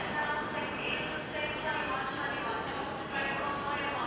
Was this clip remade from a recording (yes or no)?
no